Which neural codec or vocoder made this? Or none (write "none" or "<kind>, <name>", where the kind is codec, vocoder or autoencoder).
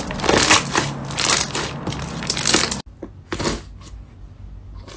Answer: none